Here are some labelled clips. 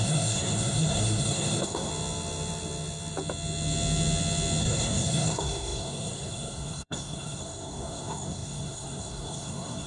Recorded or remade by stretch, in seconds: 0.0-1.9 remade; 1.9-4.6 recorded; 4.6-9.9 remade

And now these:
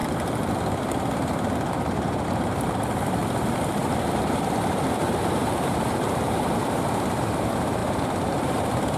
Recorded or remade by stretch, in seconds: 0.0-1.7 recorded; 1.7-3.2 remade; 3.2-3.8 recorded; 3.8-9.0 remade

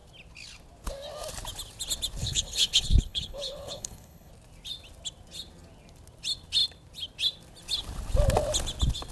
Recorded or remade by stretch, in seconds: 0.0-2.2 recorded; 2.2-4.3 remade; 4.3-9.1 recorded

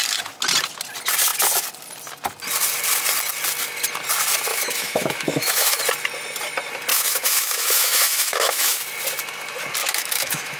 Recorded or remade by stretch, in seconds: 0.0-4.5 recorded; 4.5-5.8 remade; 5.8-6.9 recorded; 6.9-8.8 remade; 8.8-9.8 recorded; 9.8-10.6 remade